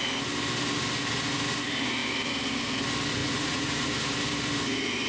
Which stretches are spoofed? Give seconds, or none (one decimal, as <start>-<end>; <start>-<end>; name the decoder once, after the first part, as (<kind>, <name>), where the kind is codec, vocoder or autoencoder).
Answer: 3.2-3.9 (vocoder, Vocos)